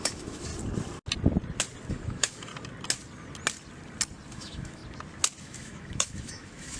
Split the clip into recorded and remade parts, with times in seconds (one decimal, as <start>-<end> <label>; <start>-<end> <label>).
0.0-0.5 remade; 0.5-1.9 recorded; 1.9-2.5 remade; 2.5-4.3 recorded; 4.3-4.8 remade; 4.8-5.4 recorded; 5.4-6.8 remade